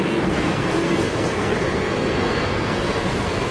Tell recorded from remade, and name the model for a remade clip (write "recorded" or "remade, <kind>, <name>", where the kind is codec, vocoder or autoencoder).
remade, codec, SNAC